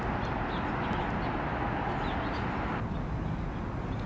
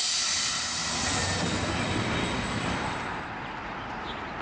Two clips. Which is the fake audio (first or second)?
second